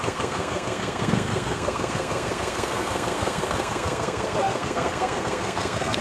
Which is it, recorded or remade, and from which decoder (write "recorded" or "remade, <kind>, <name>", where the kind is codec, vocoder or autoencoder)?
remade, codec, SNAC